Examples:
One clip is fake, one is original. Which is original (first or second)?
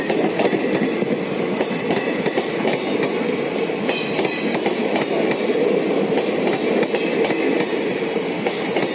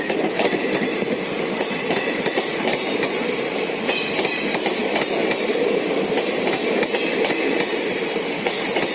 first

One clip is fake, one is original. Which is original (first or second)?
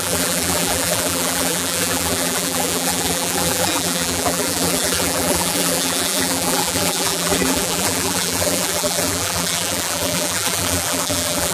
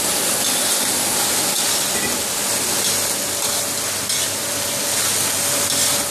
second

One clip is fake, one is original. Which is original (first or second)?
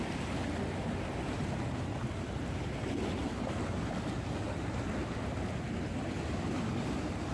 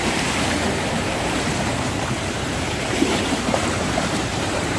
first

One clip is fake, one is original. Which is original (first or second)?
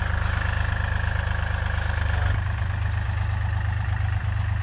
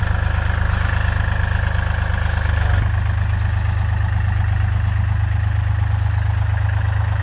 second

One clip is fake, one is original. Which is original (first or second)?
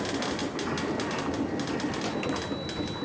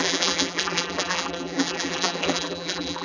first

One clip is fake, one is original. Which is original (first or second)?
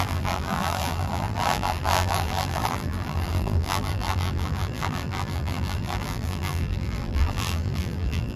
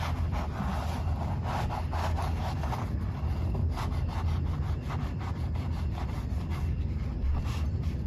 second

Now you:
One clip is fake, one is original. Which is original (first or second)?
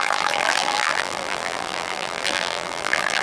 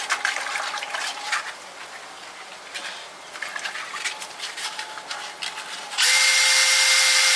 second